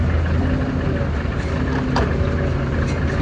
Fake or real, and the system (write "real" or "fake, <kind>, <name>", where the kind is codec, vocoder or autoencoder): real